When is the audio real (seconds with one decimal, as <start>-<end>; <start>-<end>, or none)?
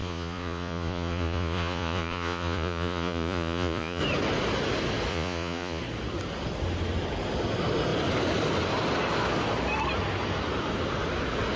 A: 4.0-5.1; 5.8-11.6